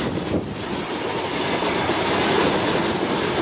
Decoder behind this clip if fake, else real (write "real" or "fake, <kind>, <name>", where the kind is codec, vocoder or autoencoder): real